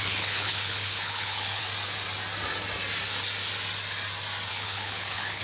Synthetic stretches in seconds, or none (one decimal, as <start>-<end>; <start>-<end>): 0.0-1.6; 4.5-5.4

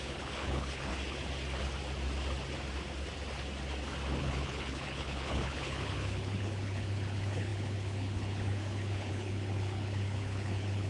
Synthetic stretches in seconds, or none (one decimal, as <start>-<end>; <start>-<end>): 0.0-0.9; 4.2-10.9

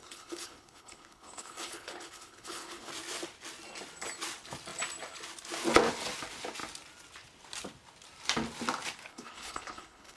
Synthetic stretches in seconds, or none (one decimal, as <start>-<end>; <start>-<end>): 0.0-2.9; 9.1-10.2

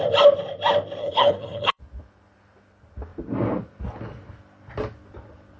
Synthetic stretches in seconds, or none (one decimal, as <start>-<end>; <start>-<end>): 1.0-1.8